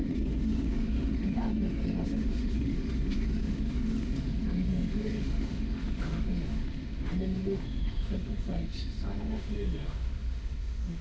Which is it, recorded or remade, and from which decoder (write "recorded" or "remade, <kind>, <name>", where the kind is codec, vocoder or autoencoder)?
remade, autoencoder, DAC-VAE